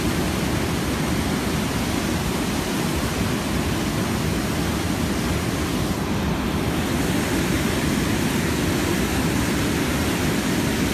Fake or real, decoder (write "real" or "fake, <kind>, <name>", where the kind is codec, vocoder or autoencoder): real